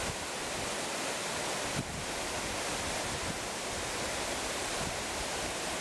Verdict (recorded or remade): recorded